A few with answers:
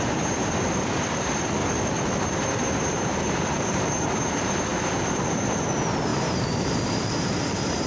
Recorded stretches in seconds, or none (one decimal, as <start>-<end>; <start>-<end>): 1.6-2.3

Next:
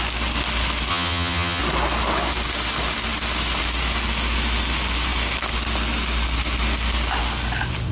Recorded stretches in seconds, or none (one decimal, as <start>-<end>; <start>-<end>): 0.0-0.9; 1.6-7.9

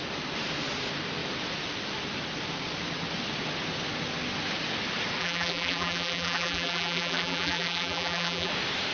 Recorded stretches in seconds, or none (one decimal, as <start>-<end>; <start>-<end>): 0.0-5.2; 8.5-8.9

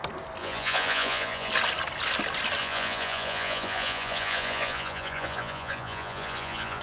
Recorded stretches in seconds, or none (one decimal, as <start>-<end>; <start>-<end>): 0.0-0.4; 1.5-2.6

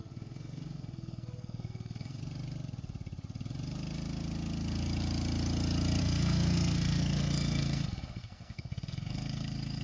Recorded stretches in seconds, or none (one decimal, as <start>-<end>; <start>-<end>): 2.2-6.0

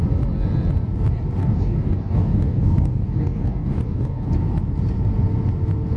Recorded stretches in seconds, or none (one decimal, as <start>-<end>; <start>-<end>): 0.0-1.4; 4.3-6.0

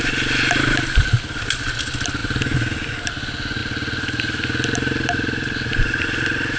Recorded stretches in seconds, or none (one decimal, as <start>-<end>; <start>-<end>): 0.0-6.6

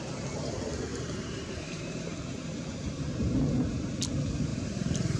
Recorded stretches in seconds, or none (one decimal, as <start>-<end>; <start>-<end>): 0.0-0.9; 4.0-4.5